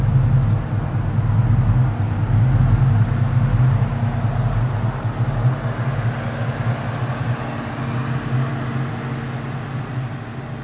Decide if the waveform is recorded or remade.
recorded